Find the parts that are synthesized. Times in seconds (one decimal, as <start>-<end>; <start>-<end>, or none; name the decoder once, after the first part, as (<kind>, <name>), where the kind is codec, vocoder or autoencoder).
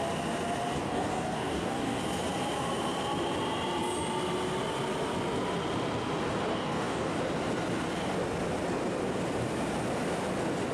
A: 0.8-2.0 (codec, DAC); 6.5-7.2